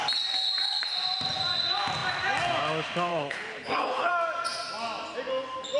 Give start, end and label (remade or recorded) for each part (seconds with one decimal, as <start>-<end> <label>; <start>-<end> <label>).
0.0-3.1 recorded; 3.1-4.1 remade; 4.1-5.8 recorded